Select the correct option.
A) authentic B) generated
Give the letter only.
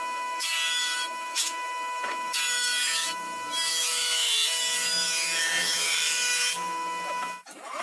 B